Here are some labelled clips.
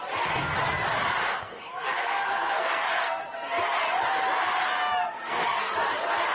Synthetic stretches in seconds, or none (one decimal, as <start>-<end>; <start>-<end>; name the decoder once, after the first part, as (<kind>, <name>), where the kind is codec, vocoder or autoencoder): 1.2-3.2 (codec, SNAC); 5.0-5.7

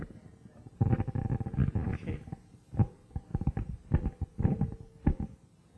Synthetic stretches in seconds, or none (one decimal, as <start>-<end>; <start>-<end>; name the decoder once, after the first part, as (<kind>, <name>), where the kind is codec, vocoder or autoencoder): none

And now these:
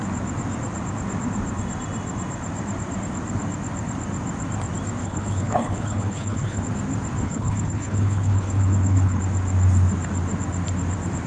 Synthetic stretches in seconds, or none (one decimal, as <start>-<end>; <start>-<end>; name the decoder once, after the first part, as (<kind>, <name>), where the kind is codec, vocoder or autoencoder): 5.0-6.6 (codec, HILCodec); 7.2-9.2

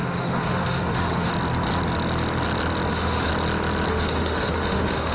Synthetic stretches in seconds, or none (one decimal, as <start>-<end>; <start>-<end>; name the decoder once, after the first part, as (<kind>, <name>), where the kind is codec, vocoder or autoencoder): 0.0-1.3 (autoencoder, DAC-VAE); 2.9-3.3; 3.9-5.1

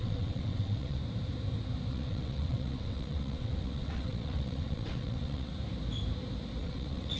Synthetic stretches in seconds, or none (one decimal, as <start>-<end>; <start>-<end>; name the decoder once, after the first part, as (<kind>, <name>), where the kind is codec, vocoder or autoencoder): 0.0-1.0 (vocoder, WaveNeXt); 1.9-5.5; 6.6-7.2